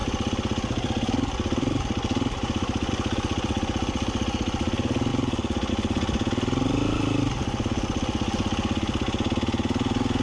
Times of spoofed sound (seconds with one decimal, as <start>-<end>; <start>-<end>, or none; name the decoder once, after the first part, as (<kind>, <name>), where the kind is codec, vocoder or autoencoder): 0.0-2.9 (vocoder, BigVGAN v2)